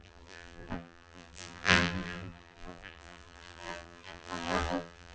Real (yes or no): no